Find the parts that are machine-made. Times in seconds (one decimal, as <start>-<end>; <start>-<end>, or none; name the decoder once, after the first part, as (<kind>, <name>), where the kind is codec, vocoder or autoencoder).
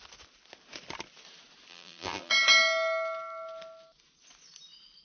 1.7-2.3 (vocoder, BigVGAN v2)